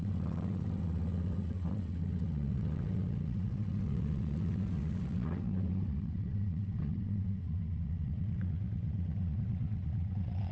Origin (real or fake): fake